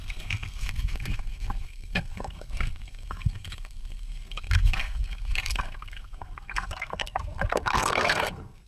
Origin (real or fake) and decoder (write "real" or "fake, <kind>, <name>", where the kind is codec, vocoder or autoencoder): fake, codec, SNAC